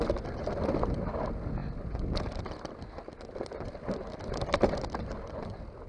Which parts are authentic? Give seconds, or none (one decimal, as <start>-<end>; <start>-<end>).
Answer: 0.0-5.9